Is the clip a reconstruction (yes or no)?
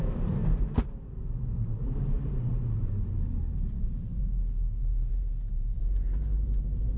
yes